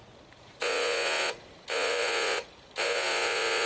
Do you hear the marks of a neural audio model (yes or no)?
yes